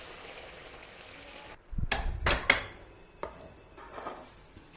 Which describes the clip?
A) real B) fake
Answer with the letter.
A